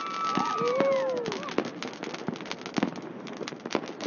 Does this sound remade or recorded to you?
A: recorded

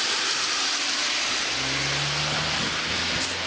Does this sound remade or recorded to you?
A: recorded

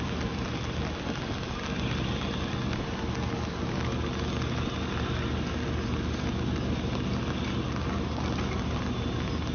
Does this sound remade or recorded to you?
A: recorded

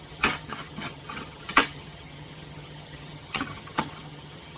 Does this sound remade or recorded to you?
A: remade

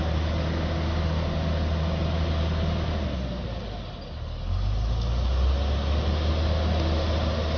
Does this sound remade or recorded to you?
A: recorded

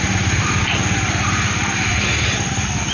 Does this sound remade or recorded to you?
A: recorded